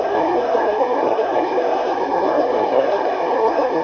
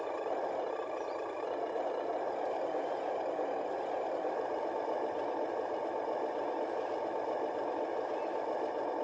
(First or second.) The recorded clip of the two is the second